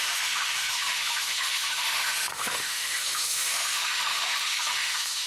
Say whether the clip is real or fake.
fake